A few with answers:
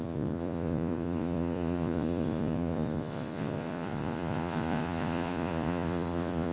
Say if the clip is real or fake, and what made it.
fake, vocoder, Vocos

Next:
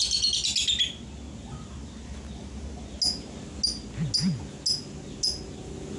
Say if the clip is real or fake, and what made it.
real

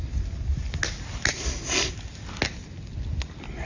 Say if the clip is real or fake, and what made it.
real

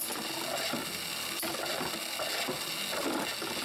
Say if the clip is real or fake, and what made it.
real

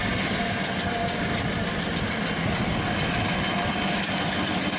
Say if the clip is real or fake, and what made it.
real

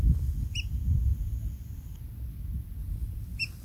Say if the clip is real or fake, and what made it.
real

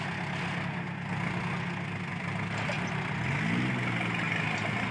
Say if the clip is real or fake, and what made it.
real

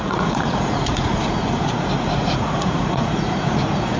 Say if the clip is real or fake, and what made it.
fake, vocoder, Vocos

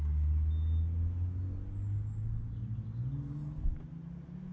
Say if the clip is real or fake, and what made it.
real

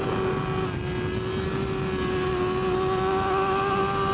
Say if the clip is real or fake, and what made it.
real